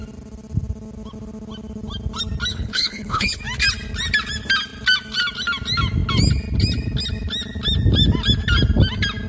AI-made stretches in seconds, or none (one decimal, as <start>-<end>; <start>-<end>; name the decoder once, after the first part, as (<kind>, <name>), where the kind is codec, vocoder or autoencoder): 2.5-3.4 (codec, HILCodec)